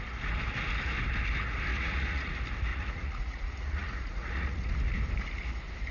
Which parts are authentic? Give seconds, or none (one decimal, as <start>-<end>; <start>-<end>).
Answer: 0.0-1.7; 2.3-2.7; 4.7-5.9